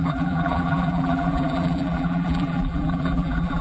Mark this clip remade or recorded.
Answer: remade